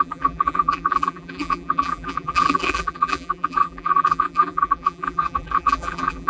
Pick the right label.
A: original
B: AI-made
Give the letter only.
B